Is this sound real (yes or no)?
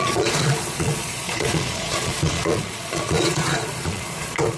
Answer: no